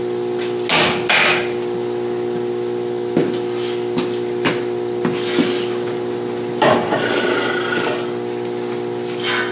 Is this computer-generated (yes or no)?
no